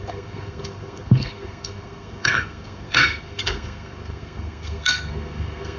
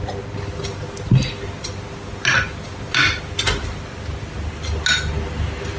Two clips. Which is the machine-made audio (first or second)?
first